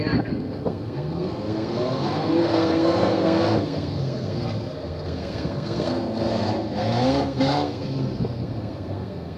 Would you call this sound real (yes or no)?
no